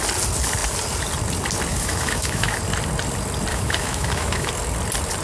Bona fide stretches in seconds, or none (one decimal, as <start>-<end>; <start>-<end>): 0.0-1.7; 2.6-3.5; 4.5-5.2